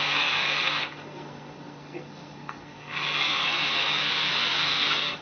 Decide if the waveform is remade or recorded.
remade